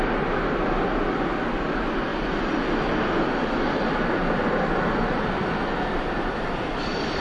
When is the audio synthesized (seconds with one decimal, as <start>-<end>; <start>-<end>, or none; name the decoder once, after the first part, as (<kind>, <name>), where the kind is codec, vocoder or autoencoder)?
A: none